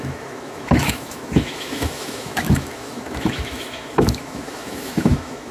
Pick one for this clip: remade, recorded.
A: remade